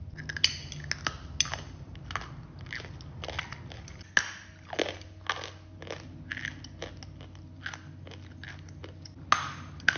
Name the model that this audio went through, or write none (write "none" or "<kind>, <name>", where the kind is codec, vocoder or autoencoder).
none